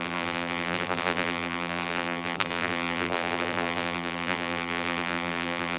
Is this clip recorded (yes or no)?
no